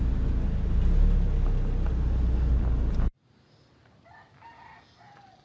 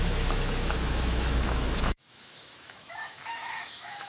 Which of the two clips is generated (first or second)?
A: second